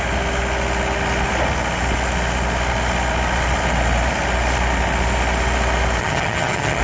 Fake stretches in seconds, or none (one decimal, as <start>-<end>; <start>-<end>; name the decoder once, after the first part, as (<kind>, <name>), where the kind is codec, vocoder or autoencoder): 6.0-6.8 (vocoder, HiFi-GAN)